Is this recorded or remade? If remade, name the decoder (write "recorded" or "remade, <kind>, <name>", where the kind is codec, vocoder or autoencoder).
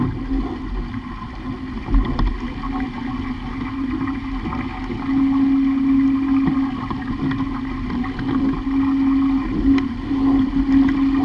recorded